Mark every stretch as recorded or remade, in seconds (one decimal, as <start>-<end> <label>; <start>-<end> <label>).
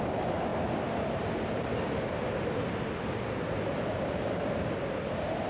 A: 0.0-5.5 remade